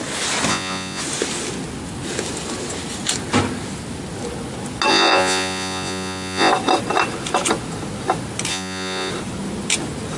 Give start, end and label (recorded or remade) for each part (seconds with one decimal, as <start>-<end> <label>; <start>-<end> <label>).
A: 0.0-0.5 recorded; 0.5-1.0 remade; 1.0-4.9 recorded; 4.9-6.5 remade; 6.5-8.5 recorded; 8.5-9.1 remade; 9.1-10.2 recorded

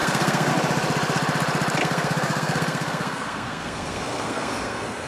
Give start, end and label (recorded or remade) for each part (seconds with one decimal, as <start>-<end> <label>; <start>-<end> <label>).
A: 0.0-0.5 remade; 0.5-1.8 recorded; 1.8-5.1 remade

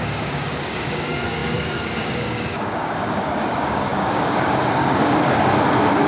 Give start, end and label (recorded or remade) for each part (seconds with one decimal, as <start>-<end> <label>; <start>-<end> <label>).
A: 0.0-6.1 remade

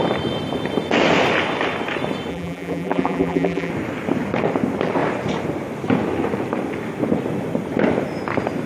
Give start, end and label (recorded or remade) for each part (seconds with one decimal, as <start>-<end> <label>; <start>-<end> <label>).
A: 0.0-2.3 recorded; 2.3-3.7 remade; 3.7-8.7 recorded

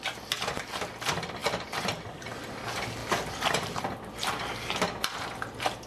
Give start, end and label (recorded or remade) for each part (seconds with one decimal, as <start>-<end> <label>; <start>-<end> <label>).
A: 0.0-1.4 recorded; 1.4-2.3 remade; 2.3-5.9 recorded